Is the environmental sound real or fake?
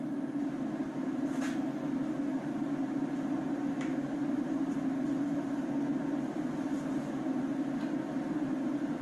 real